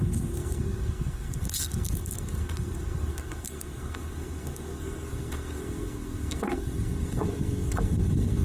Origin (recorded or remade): remade